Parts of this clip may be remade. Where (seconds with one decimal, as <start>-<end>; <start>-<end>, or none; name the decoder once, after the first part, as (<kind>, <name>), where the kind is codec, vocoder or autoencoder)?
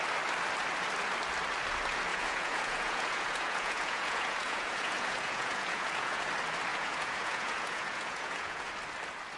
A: 2.1-6.2 (vocoder, Vocos); 6.7-8.7